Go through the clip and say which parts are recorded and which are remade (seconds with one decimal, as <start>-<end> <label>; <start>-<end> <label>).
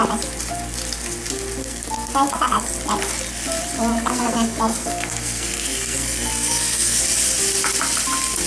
0.0-1.6 recorded; 1.6-2.7 remade; 2.7-3.9 recorded; 3.9-7.0 remade; 7.0-8.5 recorded